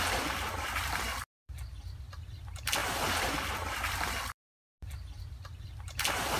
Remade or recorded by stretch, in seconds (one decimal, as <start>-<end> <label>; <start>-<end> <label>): 0.0-6.4 remade